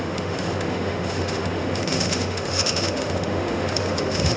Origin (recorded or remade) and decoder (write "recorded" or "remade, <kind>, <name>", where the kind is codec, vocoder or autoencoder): remade, autoencoder, DAC-VAE